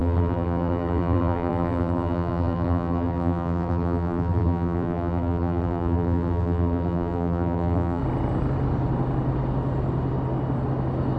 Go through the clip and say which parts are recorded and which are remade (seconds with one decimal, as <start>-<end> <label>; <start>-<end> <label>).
0.0-8.0 remade; 8.0-11.2 recorded